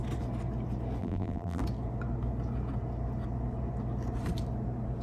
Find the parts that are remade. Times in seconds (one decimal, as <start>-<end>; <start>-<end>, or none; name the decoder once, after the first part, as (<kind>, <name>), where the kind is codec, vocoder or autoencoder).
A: 1.0-1.6 (vocoder, BigVGAN v2)